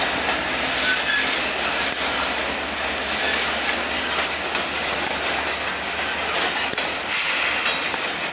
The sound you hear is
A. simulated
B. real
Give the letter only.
B